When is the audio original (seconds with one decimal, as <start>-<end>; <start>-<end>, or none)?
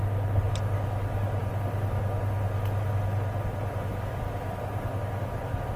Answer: 0.0-5.8